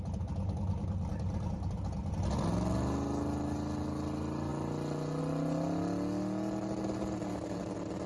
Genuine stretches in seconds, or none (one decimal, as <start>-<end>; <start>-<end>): 0.0-8.1